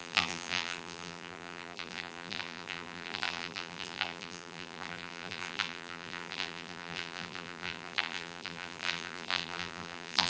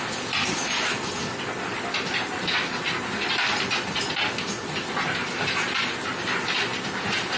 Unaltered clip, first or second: second